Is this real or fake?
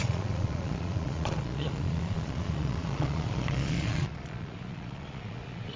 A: fake